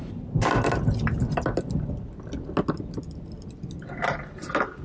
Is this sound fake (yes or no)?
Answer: no